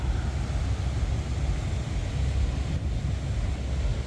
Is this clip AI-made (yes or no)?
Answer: no